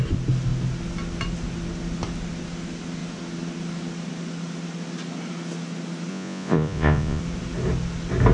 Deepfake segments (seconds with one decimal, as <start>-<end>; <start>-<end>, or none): 6.1-7.2